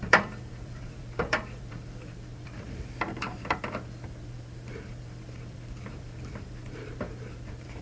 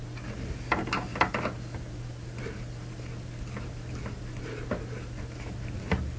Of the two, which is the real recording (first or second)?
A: second